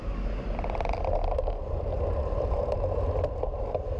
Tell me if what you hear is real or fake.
real